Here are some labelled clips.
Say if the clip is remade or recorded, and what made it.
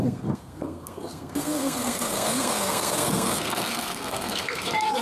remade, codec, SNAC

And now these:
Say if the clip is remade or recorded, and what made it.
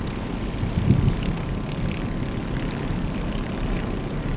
recorded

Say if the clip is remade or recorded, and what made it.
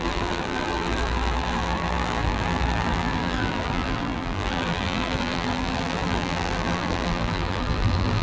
remade, vocoder, BigVGAN v2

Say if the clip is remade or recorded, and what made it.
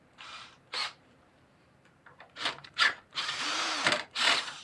remade, vocoder, BigVGAN v2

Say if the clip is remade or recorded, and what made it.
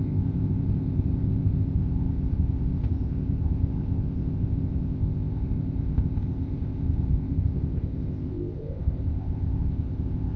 remade, codec, ZipCodec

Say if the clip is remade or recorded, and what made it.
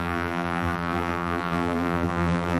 remade, vocoder, BigVGAN v2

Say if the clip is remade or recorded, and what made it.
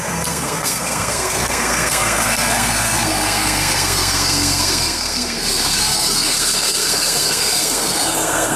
remade, codec, SNAC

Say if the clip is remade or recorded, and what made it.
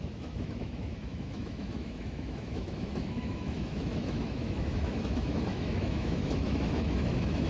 remade, autoencoder, DAC-VAE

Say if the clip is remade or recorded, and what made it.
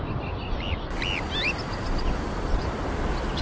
recorded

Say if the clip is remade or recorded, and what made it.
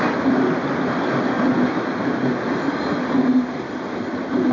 recorded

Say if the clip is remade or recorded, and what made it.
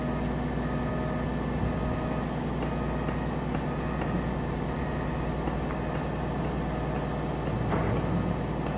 recorded